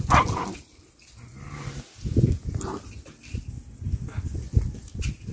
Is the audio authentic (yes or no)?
yes